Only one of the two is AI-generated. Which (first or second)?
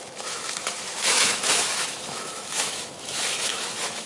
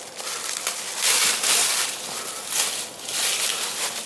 first